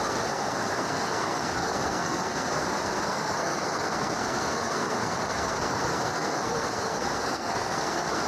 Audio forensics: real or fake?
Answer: fake